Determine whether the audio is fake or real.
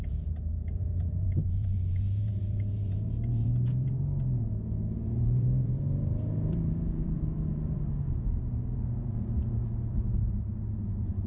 fake